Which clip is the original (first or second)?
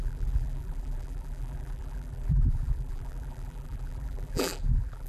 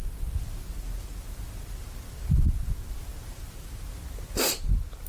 second